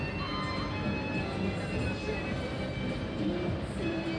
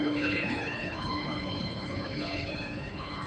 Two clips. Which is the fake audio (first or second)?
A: second